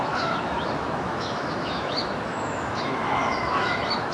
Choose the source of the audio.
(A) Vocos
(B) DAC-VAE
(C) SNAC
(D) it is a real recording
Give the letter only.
B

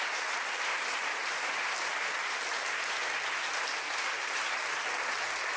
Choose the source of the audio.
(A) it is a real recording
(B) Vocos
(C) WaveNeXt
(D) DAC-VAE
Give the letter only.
A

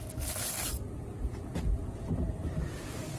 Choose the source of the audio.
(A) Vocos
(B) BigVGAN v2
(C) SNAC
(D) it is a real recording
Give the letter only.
D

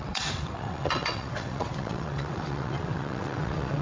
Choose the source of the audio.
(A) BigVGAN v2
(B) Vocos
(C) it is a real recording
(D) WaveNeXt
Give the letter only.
D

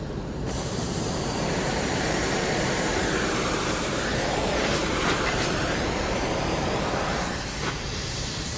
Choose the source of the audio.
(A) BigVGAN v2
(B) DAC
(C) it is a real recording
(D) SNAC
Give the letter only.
A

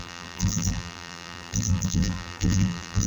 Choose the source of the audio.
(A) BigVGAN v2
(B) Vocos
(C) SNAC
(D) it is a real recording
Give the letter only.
A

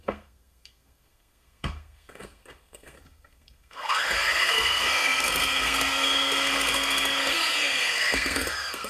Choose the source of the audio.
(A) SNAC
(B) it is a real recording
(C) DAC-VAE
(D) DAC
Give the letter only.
A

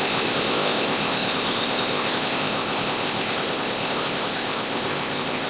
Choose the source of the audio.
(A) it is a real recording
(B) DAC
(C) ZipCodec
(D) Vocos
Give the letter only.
C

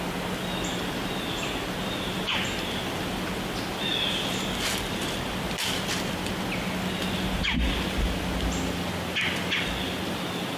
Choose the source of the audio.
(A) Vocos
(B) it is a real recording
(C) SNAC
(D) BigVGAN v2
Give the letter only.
B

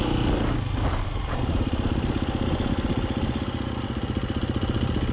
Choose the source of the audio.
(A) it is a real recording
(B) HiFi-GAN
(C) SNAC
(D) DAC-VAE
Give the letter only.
A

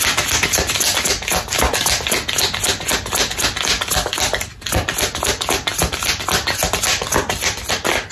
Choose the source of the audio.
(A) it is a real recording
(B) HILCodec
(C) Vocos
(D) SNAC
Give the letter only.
A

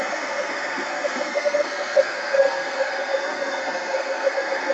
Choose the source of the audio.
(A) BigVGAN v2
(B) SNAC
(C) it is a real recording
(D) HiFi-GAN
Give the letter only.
B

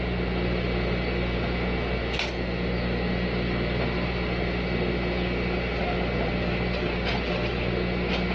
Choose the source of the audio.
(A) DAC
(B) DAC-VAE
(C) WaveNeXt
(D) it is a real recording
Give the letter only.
D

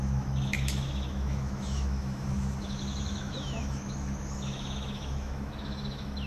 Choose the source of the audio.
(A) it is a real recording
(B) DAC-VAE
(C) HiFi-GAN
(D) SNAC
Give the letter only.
B